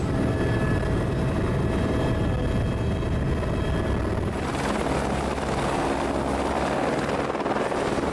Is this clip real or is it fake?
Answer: real